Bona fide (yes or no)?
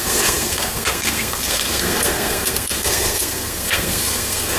no